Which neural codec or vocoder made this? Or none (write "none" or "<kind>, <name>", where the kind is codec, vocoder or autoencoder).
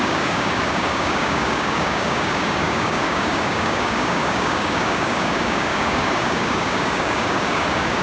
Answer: codec, DAC